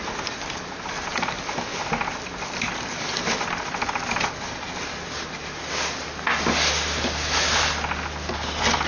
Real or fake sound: real